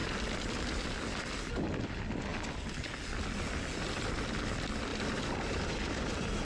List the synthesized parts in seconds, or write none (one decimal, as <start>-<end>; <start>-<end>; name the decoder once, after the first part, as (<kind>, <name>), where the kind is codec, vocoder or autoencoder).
4.9-5.6 (vocoder, BigVGAN v2)